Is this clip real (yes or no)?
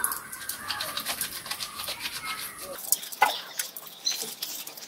yes